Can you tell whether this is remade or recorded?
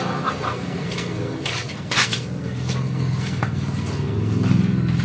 remade